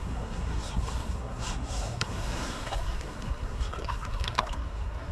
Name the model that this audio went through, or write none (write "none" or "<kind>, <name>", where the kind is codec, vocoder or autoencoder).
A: codec, SNAC